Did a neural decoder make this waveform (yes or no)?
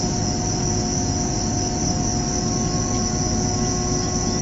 no